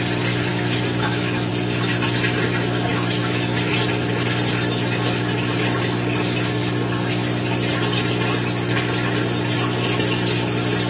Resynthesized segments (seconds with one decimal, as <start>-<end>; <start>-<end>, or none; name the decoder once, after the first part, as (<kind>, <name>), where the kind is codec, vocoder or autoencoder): 0.5-1.5 (autoencoder, DAC-VAE); 2.9-3.7